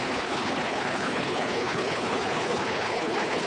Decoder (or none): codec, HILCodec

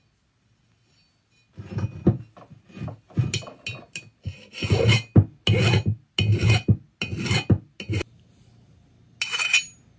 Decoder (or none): none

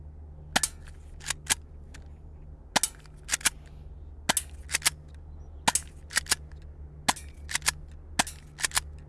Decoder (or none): none